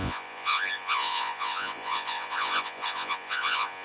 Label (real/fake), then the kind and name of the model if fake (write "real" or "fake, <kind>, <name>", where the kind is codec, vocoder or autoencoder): fake, vocoder, Vocos